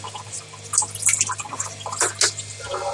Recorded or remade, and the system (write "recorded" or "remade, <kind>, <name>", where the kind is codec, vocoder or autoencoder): recorded